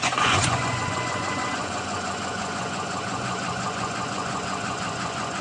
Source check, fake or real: fake